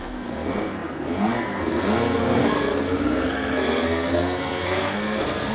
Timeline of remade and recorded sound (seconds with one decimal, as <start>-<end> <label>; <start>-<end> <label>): 0.0-5.5 remade